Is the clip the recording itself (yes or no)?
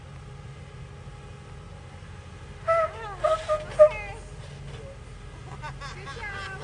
yes